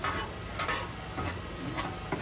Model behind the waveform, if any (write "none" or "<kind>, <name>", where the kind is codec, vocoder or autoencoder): none